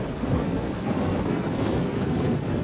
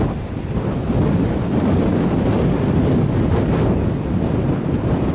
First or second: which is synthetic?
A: first